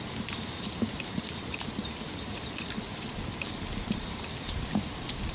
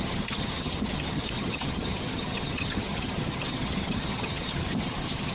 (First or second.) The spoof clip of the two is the second